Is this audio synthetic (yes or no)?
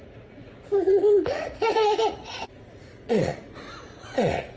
yes